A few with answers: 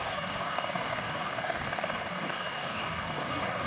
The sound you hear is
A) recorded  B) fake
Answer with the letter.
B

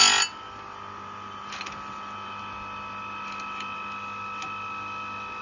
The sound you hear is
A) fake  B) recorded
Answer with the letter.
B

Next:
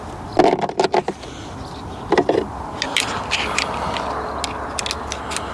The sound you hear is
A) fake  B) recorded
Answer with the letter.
B